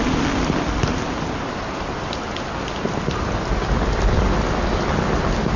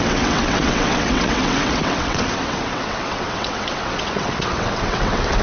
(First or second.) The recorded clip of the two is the first